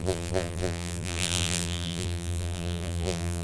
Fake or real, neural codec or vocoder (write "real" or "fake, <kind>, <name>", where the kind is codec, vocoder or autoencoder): fake, vocoder, BigVGAN v2